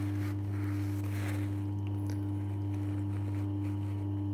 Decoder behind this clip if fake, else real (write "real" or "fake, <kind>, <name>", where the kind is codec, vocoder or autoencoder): real